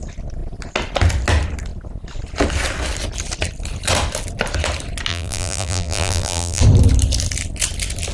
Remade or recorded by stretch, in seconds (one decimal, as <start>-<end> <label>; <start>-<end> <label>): 0.0-5.1 recorded; 5.1-6.6 remade; 6.6-8.1 recorded